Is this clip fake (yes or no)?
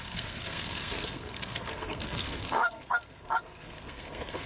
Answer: yes